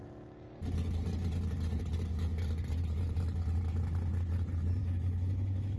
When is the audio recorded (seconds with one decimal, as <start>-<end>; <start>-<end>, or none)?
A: 0.0-4.8